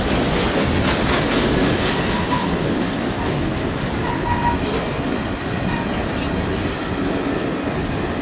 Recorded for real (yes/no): yes